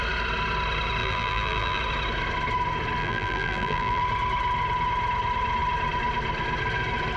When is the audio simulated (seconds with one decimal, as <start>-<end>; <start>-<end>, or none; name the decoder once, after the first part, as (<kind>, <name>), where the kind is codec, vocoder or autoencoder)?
1.0-1.8 (vocoder, BigVGAN v2); 3.0-4.0